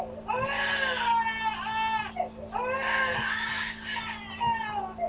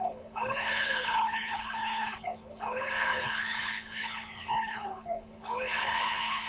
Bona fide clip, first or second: first